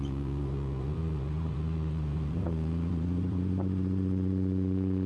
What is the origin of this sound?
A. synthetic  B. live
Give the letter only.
A